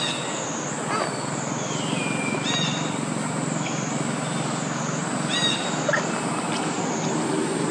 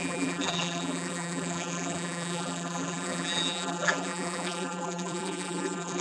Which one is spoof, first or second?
second